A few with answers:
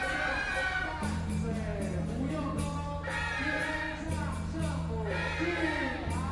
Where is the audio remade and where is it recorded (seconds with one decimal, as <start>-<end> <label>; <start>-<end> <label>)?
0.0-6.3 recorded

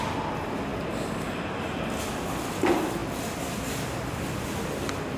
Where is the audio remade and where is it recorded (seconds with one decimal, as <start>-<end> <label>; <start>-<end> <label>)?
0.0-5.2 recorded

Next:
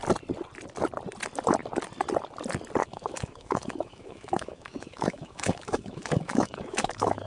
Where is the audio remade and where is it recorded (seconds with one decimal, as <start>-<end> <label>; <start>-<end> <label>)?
0.0-2.8 recorded; 2.8-7.3 remade

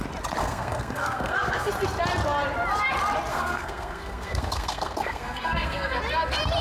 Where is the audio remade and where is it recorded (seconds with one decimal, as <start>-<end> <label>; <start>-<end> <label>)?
0.0-0.4 recorded; 0.4-1.7 remade; 1.7-3.3 recorded; 3.3-6.0 remade; 6.0-6.6 recorded